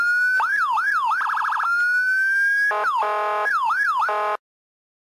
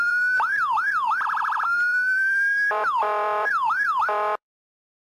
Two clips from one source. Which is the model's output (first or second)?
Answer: second